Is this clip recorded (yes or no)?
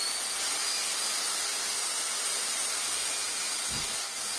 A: yes